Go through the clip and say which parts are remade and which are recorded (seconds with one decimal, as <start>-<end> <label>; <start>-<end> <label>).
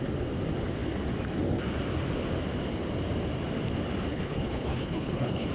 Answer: 0.0-4.1 recorded; 4.1-5.5 remade